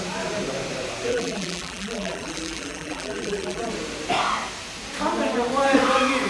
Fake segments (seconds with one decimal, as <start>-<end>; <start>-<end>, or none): 1.1-3.7